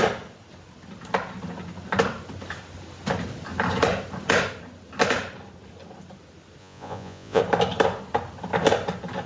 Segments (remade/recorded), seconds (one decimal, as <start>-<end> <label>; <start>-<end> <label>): 0.0-6.6 recorded; 6.6-7.4 remade; 7.4-9.3 recorded